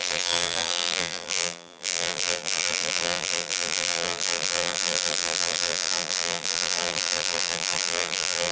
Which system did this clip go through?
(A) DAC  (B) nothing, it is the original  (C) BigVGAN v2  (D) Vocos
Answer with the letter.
C